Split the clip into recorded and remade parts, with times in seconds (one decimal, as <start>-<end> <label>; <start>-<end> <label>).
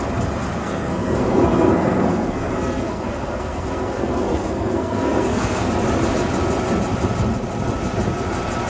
0.0-0.6 recorded; 0.6-5.7 remade; 5.7-8.7 recorded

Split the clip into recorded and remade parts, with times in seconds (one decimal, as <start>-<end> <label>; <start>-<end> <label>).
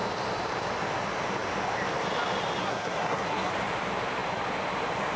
0.0-2.6 recorded; 2.6-3.5 remade; 3.5-5.2 recorded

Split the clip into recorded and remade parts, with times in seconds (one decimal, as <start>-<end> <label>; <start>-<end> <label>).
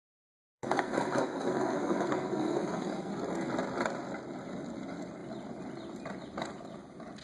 0.0-3.1 remade; 3.1-7.2 recorded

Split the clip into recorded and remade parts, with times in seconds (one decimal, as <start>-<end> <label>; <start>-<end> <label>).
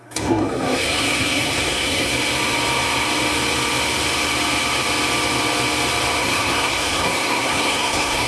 0.0-2.1 remade; 2.1-6.2 recorded; 6.2-8.3 remade